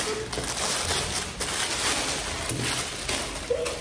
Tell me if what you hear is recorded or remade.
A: recorded